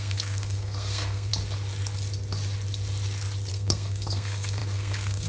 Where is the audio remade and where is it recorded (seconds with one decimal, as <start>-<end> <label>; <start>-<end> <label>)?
0.0-1.3 remade; 1.3-3.5 recorded; 3.5-5.3 remade